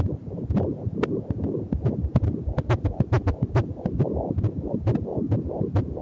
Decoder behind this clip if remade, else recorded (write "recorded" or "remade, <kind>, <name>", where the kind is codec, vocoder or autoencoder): recorded